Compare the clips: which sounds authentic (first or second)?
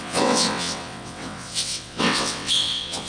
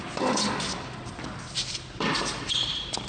second